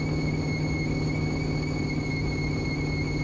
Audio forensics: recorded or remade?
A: recorded